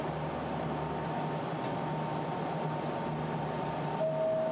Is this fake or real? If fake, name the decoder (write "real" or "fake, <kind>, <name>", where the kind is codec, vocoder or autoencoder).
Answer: real